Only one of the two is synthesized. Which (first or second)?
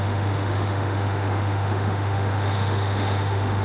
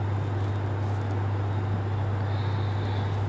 first